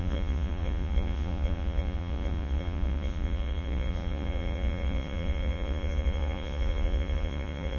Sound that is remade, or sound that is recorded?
remade